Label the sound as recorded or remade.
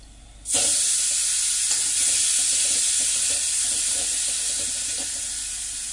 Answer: recorded